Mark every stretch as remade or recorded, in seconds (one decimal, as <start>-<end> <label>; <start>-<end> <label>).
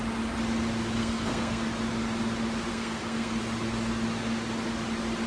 0.0-1.0 recorded; 1.0-1.6 remade; 1.6-2.7 recorded; 2.7-3.4 remade; 3.4-5.3 recorded